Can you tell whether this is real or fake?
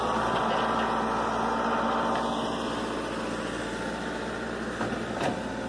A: real